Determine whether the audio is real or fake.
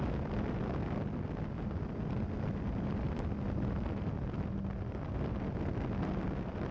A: real